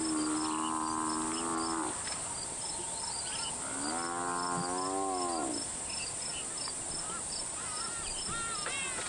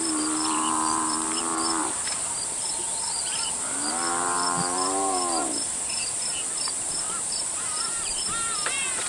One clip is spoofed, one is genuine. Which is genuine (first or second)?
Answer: first